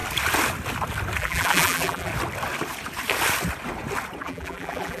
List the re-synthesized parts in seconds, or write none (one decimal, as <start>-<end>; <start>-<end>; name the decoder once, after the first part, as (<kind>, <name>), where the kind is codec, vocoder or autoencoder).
1.2-2.1 (vocoder, BigVGAN v2); 4.2-5.0

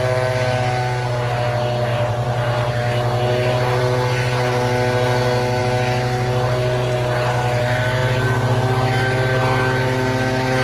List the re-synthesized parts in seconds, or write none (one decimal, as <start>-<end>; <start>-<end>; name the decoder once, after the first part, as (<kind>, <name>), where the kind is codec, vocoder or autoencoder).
1.9-2.7 (vocoder, BigVGAN v2)

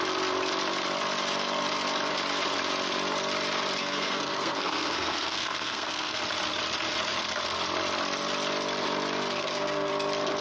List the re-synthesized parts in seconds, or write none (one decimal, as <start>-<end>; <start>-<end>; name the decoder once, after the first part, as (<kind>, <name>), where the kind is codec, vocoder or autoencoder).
3.8-6.2 (codec, SNAC); 9.3-9.9

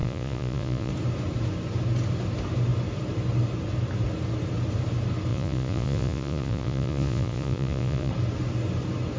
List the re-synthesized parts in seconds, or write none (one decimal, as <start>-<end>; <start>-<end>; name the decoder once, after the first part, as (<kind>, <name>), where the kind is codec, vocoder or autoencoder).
0.0-0.9 (vocoder, Vocos); 5.3-8.1